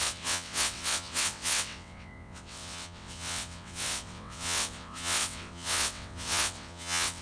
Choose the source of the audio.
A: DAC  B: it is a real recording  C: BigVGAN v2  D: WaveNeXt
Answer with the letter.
D